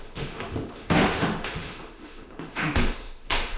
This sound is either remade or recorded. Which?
remade